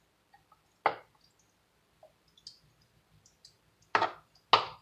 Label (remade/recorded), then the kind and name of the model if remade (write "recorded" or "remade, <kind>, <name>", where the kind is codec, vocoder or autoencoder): recorded